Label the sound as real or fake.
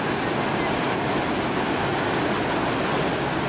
real